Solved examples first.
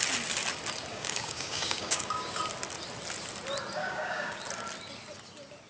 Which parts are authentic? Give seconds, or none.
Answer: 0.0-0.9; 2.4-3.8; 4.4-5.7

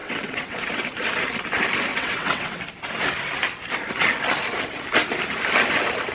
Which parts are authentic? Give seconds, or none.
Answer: 0.7-1.9; 2.6-6.1

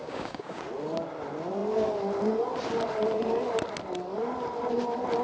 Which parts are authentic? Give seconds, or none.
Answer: 0.6-5.2

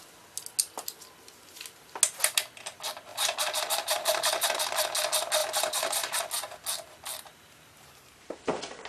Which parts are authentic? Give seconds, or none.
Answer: 0.0-3.1; 4.6-5.4; 6.2-7.3

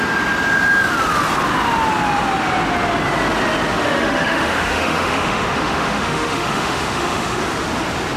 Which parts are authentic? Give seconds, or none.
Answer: 0.0-3.7; 7.4-8.2

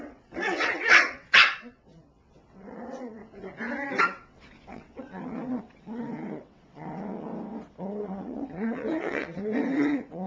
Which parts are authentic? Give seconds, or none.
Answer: 3.2-4.0; 7.3-7.8

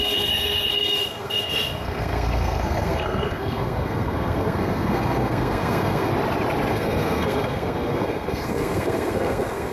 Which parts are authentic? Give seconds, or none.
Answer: 6.1-6.7

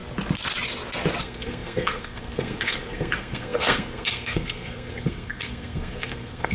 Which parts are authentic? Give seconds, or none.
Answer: 0.0-1.2